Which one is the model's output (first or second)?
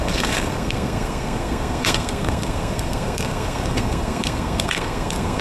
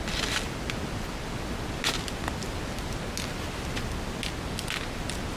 first